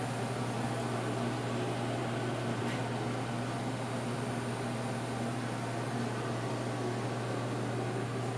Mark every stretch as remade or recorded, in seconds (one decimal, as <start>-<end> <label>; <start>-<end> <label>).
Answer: 0.0-8.4 recorded